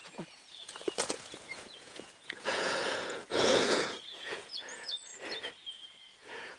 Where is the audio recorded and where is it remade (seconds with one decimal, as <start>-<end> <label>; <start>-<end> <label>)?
0.0-5.1 remade; 5.1-5.7 recorded; 5.7-6.6 remade